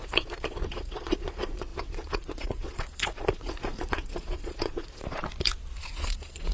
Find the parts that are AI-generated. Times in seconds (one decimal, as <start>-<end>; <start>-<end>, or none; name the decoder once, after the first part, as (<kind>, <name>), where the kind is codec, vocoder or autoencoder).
0.0-5.2 (vocoder, Vocos); 5.8-6.5